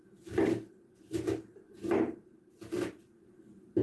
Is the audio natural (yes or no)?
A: yes